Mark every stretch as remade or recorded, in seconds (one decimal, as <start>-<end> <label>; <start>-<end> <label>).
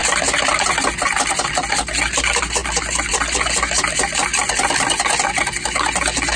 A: 0.0-6.4 recorded